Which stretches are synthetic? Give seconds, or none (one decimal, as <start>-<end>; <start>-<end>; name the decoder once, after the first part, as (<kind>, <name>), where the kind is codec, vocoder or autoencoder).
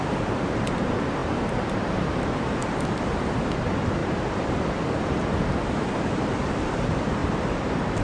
0.0-2.6 (vocoder, BigVGAN v2); 3.6-4.0; 5.5-8.0